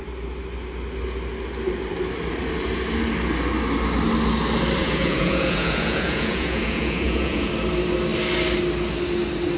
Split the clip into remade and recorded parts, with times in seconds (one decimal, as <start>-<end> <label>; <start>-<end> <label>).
0.0-4.8 recorded; 4.8-7.5 remade; 7.5-9.6 recorded